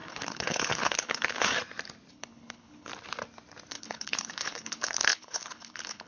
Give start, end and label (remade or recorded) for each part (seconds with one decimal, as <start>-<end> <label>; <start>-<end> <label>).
0.0-1.5 remade; 1.5-2.1 recorded; 2.1-2.9 remade; 2.9-3.7 recorded; 3.7-6.1 remade